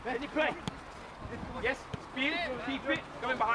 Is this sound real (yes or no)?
yes